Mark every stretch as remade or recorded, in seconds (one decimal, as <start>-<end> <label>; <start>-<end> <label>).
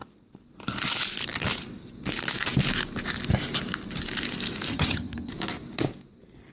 0.0-4.7 recorded; 4.7-5.3 remade; 5.3-6.5 recorded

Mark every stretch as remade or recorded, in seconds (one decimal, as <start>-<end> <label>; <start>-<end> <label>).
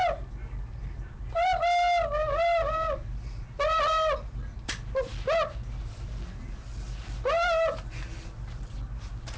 0.0-9.4 recorded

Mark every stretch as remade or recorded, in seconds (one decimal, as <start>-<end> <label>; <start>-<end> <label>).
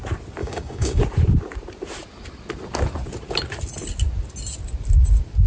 0.0-0.4 recorded; 0.4-1.0 remade; 1.0-5.5 recorded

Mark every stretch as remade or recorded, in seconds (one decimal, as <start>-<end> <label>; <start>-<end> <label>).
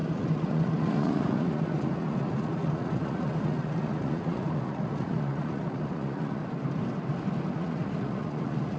0.0-6.4 remade; 6.4-7.5 recorded; 7.5-8.8 remade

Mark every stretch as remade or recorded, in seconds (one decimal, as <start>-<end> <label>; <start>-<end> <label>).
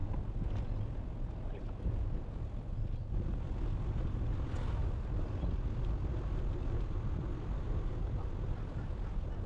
0.0-9.5 recorded